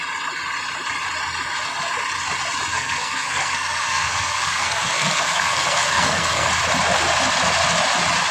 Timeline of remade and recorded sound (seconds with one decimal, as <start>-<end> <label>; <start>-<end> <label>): 0.0-2.7 recorded; 2.7-6.5 remade; 6.5-8.3 recorded